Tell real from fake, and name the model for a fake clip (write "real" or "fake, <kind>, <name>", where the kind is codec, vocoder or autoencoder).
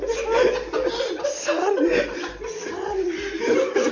real